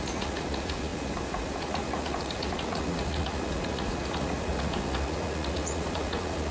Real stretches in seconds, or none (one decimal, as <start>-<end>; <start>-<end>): none